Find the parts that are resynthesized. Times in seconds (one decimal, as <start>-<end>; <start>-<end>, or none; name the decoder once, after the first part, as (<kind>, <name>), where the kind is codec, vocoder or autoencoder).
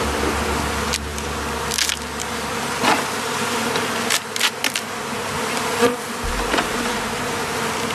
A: none